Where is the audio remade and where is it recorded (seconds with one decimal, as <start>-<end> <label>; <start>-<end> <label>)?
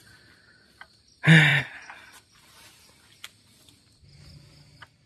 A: 0.0-5.1 recorded